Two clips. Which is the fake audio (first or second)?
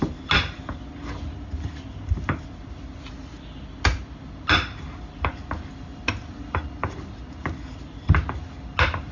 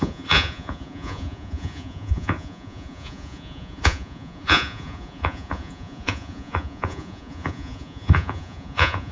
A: second